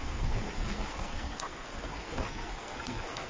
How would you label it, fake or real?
fake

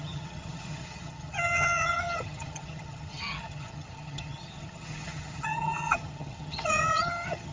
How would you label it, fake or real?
fake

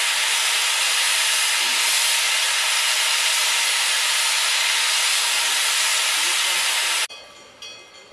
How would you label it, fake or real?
real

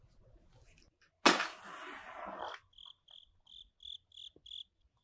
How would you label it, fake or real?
real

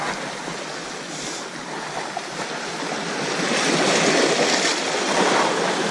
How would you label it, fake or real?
real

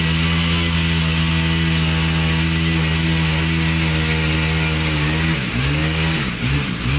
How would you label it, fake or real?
real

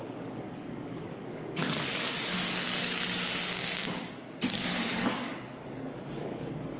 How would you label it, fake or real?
fake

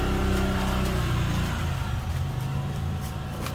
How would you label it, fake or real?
real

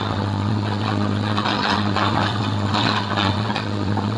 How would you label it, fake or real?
fake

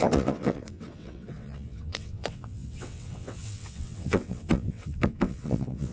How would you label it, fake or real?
fake